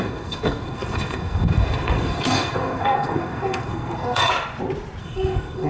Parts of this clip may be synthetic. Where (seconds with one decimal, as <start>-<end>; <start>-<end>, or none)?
0.0-4.3; 5.0-5.7